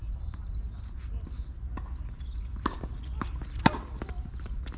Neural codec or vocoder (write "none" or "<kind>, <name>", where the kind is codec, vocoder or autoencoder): none